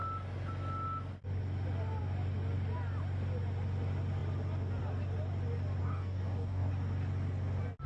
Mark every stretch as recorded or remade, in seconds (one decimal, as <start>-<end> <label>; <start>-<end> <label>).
0.0-5.8 recorded; 5.8-6.7 remade; 6.7-7.9 recorded